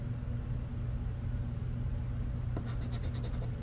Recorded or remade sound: recorded